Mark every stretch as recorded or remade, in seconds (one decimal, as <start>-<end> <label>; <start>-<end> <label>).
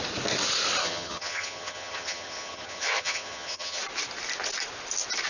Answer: 0.0-0.8 recorded; 0.8-3.8 remade; 3.8-5.3 recorded